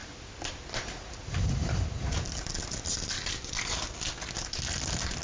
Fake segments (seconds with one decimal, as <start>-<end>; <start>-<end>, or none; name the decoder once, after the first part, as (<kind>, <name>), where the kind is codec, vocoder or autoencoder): 0.0-3.1 (vocoder, BigVGAN v2)